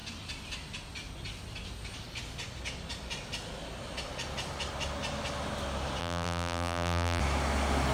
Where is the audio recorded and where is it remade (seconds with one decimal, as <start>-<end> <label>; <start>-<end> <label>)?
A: 0.0-6.0 recorded; 6.0-7.2 remade; 7.2-7.9 recorded